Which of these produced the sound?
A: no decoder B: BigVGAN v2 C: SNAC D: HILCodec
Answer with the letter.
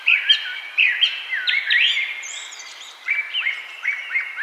B